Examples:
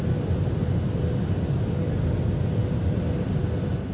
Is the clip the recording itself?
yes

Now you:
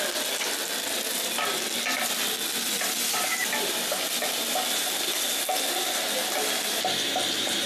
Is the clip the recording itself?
yes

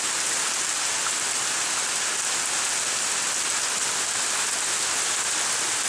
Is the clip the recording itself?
yes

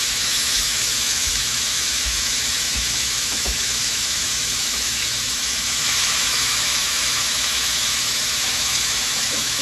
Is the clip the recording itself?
no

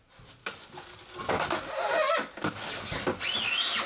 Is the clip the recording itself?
yes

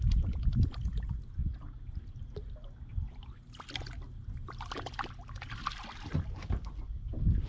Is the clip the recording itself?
yes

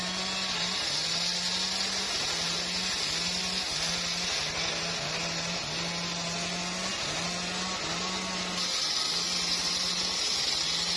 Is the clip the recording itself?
yes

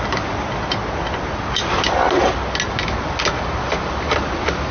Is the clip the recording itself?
yes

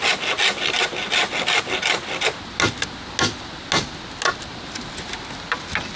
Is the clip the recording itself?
yes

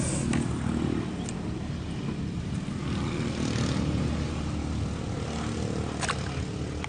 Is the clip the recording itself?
yes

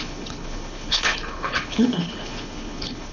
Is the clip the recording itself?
no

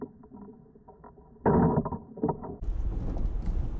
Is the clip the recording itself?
yes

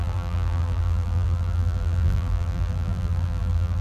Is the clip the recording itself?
no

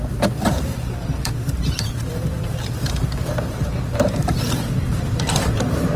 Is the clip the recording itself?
no